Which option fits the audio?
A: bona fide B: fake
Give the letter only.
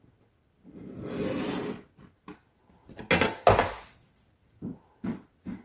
A